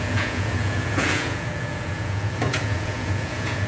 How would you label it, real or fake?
fake